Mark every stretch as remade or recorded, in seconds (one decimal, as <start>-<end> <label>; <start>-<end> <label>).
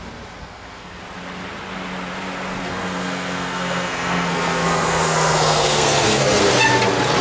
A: 0.0-0.4 recorded; 0.4-1.0 remade; 1.0-2.6 recorded; 2.6-6.4 remade; 6.4-7.2 recorded